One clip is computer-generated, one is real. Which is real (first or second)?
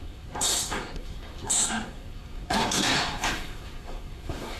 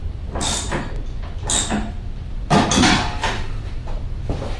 second